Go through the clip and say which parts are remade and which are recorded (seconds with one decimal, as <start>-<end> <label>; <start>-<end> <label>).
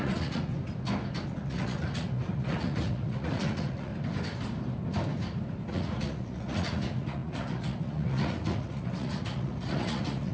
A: 0.0-0.5 remade; 0.5-1.3 recorded; 1.3-3.9 remade; 3.9-5.7 recorded; 5.7-10.3 remade